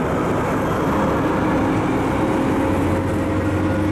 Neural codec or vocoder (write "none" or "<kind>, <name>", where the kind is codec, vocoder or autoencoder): none